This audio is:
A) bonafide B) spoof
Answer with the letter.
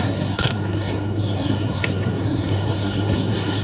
B